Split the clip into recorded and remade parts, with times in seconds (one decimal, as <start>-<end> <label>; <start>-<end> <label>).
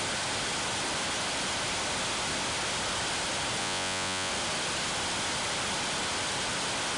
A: 0.0-3.6 recorded; 3.6-4.3 remade; 4.3-7.0 recorded